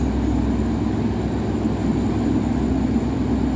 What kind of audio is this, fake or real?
real